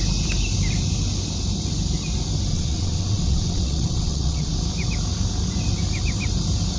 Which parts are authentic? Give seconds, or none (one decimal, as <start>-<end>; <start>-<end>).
0.0-2.5; 4.5-6.8